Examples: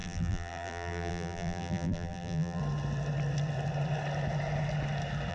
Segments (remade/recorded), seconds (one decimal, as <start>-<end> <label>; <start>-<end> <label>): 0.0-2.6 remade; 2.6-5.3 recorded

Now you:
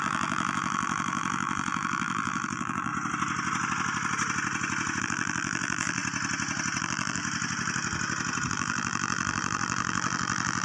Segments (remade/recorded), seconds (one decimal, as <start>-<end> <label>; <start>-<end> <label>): 0.0-2.9 remade; 2.9-5.0 recorded; 5.0-6.0 remade; 6.0-6.8 recorded; 6.8-7.2 remade; 7.2-8.5 recorded; 8.5-10.6 remade

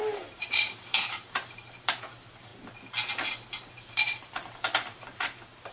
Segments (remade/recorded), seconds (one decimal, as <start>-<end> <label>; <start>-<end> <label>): 0.0-2.5 remade; 2.5-3.7 recorded; 3.7-5.7 remade